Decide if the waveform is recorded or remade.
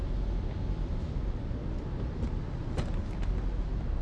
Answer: recorded